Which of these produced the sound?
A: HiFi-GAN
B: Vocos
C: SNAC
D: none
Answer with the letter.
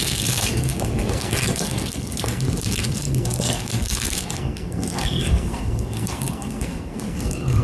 C